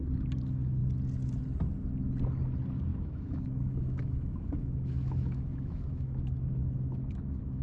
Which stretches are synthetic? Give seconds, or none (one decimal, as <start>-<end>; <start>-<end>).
2.9-7.6